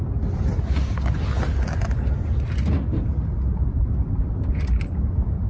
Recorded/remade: recorded